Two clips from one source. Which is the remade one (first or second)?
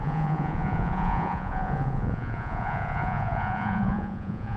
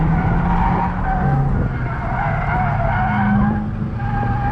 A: first